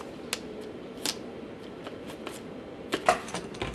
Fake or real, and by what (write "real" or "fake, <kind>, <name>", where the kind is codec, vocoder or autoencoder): real